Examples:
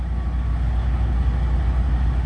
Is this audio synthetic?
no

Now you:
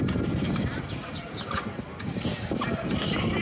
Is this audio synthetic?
no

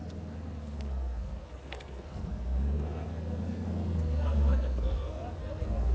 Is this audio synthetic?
yes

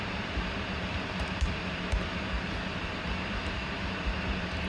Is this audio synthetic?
yes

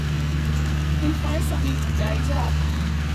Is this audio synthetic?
yes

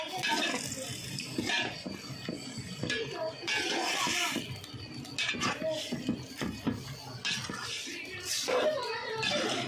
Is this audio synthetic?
no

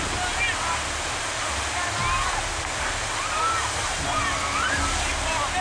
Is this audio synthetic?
no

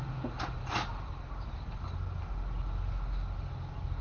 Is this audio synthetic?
no